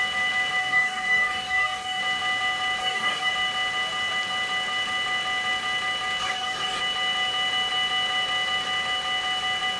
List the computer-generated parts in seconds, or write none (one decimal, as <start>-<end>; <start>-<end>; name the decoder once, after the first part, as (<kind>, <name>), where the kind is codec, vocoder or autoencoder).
0.6-2.0 (codec, DAC); 2.8-3.3; 6.2-6.8